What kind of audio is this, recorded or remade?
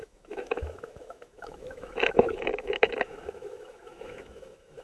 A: remade